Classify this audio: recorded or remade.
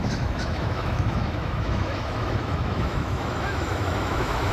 remade